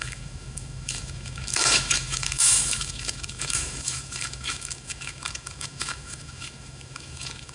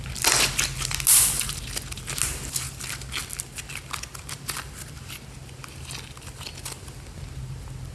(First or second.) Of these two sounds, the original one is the second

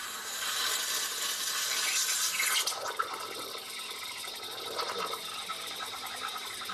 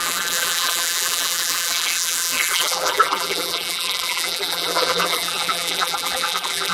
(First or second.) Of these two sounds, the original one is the first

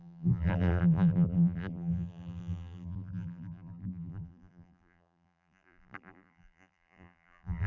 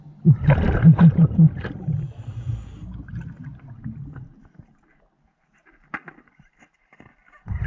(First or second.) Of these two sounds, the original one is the second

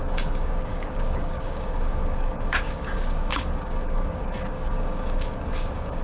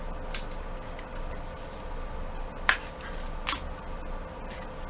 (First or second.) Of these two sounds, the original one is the second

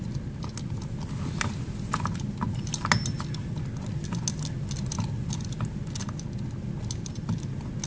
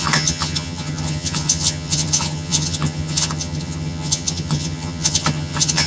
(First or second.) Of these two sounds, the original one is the first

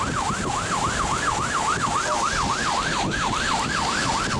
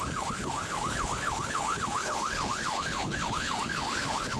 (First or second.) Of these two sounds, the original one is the first